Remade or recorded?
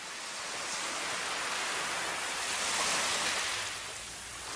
recorded